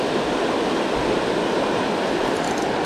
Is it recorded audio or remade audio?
recorded